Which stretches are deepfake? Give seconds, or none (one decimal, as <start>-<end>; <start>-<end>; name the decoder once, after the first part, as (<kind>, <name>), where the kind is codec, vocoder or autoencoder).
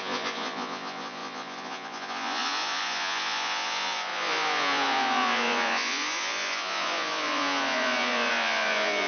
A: 0.0-9.1 (vocoder, Vocos)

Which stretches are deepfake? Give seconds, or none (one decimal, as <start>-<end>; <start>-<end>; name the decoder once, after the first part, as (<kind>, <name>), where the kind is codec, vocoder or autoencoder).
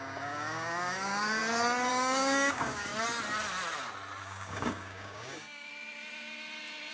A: 0.0-1.4 (codec, DAC); 1.9-2.9; 4.2-5.7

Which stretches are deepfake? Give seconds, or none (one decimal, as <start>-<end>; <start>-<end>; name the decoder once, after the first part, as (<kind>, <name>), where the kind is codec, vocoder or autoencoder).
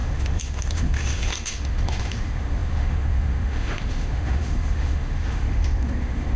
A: 0.0-6.4 (autoencoder, DAC-VAE)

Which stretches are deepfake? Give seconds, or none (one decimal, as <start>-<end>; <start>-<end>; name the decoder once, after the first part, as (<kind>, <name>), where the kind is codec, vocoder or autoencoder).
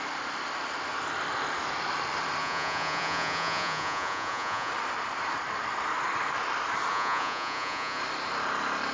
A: 2.4-4.7 (vocoder, Vocos); 6.9-8.0